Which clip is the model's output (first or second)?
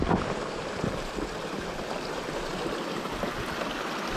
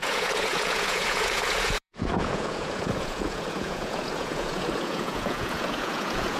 second